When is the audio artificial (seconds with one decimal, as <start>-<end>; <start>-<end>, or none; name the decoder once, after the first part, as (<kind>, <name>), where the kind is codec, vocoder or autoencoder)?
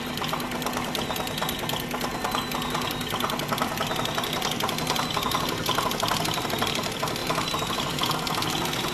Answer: none